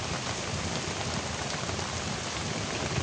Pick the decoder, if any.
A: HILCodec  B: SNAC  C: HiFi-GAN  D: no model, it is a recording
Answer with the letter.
D